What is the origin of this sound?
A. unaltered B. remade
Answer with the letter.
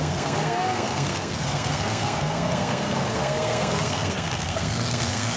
B